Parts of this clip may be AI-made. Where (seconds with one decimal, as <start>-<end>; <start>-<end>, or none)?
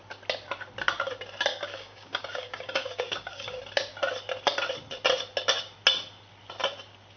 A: 1.5-3.6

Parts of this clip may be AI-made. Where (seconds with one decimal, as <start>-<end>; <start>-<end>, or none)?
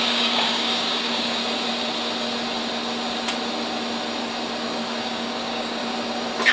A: 0.0-1.4; 5.0-5.8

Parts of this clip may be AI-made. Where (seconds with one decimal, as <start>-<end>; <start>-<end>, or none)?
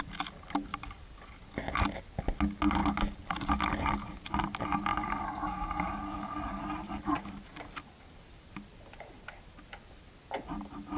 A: 4.9-6.6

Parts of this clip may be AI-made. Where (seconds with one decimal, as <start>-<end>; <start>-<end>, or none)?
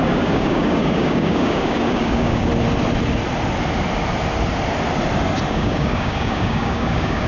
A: 0.0-2.5; 5.5-7.3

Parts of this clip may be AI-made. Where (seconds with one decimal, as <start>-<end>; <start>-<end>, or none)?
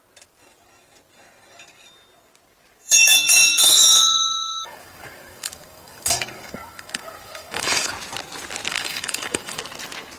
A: 2.8-7.9; 8.7-9.6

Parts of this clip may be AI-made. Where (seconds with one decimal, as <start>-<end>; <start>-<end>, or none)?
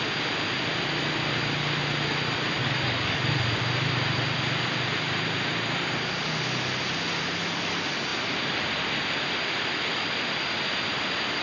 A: 2.6-3.3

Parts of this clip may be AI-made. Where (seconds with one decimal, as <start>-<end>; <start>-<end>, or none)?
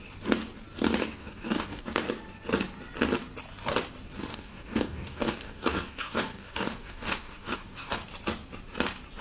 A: 1.0-2.0; 4.3-7.9